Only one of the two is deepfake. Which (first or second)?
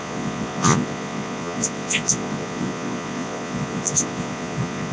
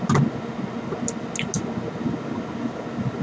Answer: first